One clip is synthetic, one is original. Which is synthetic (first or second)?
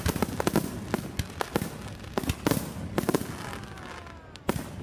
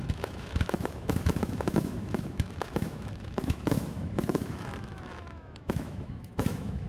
second